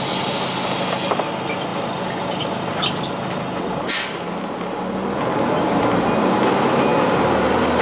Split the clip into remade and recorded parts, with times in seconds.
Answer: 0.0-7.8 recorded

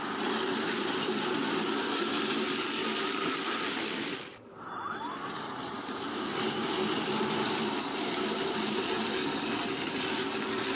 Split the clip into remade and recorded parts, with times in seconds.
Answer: 0.0-10.8 recorded

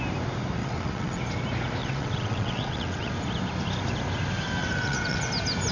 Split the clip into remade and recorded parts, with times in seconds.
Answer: 0.0-0.6 recorded; 0.6-1.2 remade; 1.2-1.8 recorded; 1.8-3.1 remade; 3.1-4.6 recorded; 4.6-5.3 remade; 5.3-5.7 recorded

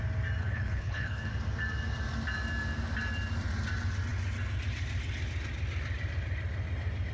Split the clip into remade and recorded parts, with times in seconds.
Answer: 0.0-0.4 recorded; 0.4-1.3 remade; 1.3-7.1 recorded

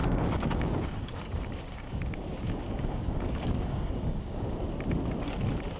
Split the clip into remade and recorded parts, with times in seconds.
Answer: 0.0-1.2 remade; 1.2-1.7 recorded; 1.7-4.5 remade; 4.5-5.8 recorded